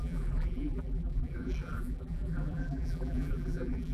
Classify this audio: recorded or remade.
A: remade